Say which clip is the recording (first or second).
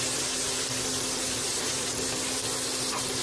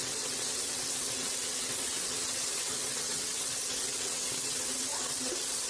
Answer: first